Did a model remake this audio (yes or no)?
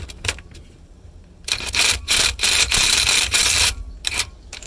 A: yes